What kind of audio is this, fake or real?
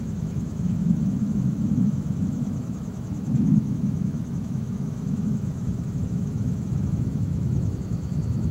fake